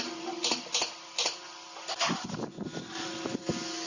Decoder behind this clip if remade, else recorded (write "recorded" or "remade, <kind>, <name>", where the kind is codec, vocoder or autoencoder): recorded